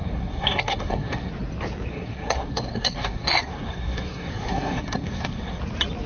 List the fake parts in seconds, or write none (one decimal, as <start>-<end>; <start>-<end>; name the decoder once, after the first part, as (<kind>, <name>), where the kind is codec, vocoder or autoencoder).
0.0-1.3 (codec, SNAC); 1.9-5.6